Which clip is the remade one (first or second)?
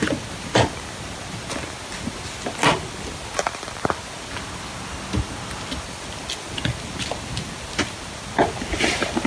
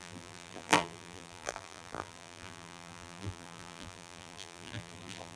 second